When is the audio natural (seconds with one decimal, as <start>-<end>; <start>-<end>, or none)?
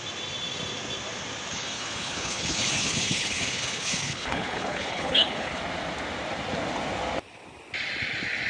0.0-1.5; 5.6-8.5